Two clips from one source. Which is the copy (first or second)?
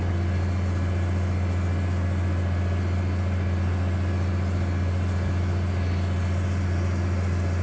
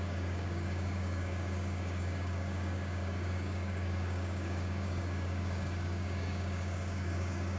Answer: second